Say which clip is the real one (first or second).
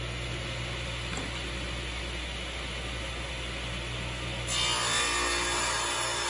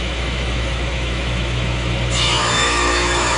first